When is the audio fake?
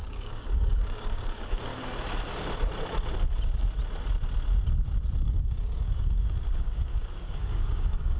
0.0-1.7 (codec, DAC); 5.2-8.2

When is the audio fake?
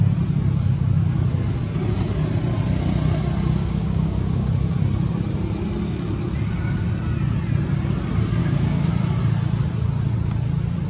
3.6-4.5 (codec, DAC); 8.4-8.9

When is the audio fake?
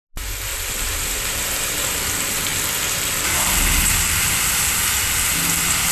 0.5-2.3 (vocoder, BigVGAN v2)